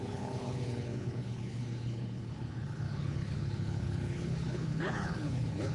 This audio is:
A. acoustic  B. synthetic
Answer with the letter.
B